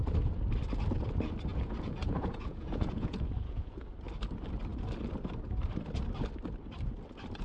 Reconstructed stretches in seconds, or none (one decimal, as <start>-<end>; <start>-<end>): 1.5-3.9